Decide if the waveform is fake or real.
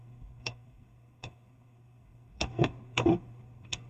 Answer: fake